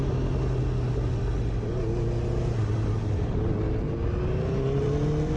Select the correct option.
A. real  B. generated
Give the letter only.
A